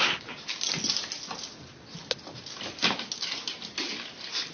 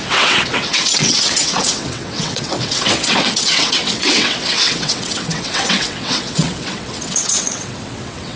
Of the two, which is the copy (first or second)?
second